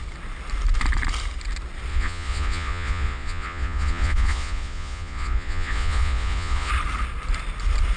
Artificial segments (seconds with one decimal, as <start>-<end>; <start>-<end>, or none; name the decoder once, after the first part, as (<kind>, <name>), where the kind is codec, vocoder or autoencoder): 1.9-6.7 (vocoder, Vocos)